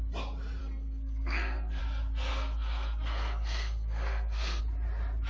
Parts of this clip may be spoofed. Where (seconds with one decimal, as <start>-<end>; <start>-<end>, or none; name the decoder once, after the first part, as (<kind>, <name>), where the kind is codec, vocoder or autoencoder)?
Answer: 0.6-1.8 (codec, SNAC); 2.3-4.6